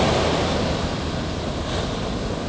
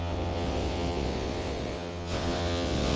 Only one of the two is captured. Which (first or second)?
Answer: first